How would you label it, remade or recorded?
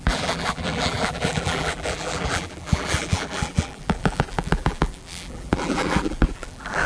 remade